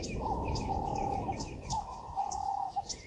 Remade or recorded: remade